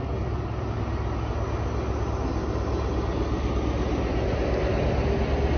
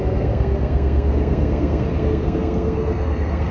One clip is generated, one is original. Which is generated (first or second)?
second